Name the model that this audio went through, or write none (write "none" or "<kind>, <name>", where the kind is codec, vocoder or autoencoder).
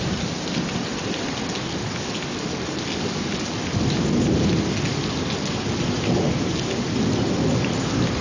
none